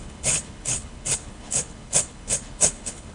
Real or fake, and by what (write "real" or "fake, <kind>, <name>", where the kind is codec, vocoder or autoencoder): fake, codec, HILCodec